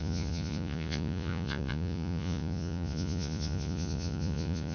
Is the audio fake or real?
fake